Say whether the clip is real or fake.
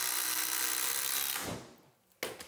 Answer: real